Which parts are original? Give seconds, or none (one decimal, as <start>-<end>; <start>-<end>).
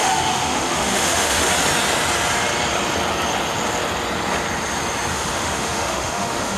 1.5-5.1